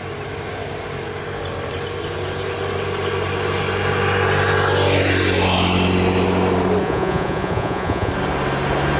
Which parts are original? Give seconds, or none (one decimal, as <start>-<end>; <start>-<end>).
0.0-6.8; 8.1-9.0